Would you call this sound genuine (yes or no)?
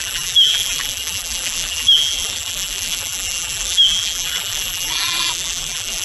no